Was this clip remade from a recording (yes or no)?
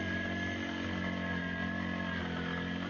no